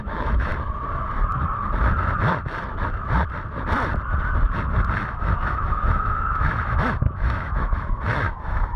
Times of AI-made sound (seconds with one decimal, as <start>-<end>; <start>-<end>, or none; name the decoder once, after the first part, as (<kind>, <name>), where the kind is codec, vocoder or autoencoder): 0.0-0.5 (autoencoder, DAC-VAE); 5.1-8.8